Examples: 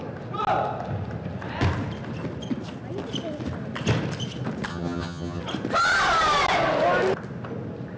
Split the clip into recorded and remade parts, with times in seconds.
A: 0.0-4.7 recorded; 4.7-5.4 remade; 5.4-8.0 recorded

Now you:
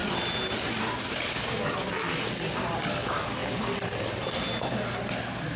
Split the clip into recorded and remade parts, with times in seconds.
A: 0.0-5.6 recorded

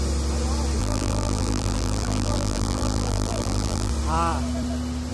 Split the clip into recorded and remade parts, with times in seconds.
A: 0.0-0.8 recorded; 0.8-3.9 remade; 3.9-5.1 recorded